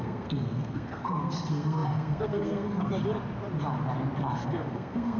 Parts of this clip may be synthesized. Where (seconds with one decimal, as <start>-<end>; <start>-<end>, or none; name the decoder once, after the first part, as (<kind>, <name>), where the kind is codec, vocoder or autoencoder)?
0.0-2.9 (codec, SNAC); 4.2-5.2